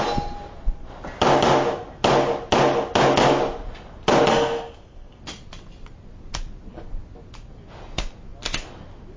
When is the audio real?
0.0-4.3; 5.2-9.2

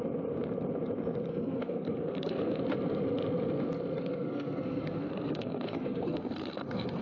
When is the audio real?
0.0-1.3; 2.6-4.0